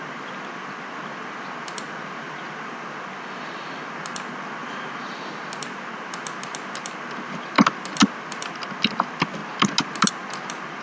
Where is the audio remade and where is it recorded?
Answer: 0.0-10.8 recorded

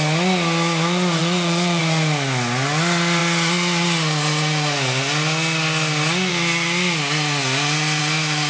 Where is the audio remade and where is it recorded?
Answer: 0.0-1.2 recorded; 1.2-1.8 remade; 1.8-8.5 recorded

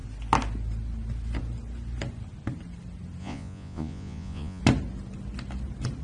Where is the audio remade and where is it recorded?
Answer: 0.0-3.2 recorded; 3.2-4.6 remade; 4.6-6.0 recorded

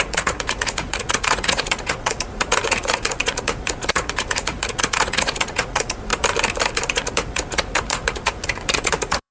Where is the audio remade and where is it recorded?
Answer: 0.0-6.1 remade; 6.1-6.9 recorded; 6.9-9.3 remade

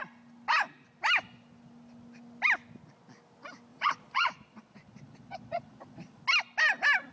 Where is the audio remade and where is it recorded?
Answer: 0.0-3.7 recorded; 3.7-6.2 remade; 6.2-7.1 recorded

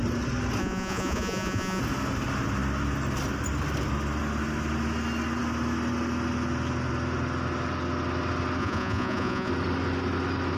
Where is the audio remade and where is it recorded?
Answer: 0.0-0.6 recorded; 0.6-1.8 remade; 1.8-8.6 recorded; 8.6-9.5 remade; 9.5-10.6 recorded

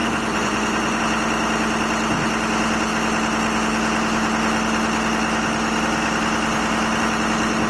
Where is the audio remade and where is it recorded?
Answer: 0.0-1.0 remade; 1.0-7.7 recorded

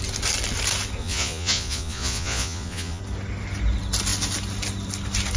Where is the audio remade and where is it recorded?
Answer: 0.0-1.0 recorded; 1.0-3.0 remade; 3.0-5.4 recorded